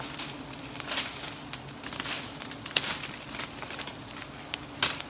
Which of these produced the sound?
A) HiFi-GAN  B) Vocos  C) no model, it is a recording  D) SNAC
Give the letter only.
C